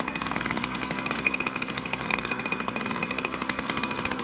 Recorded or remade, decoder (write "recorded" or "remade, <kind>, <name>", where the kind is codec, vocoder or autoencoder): remade, codec, SNAC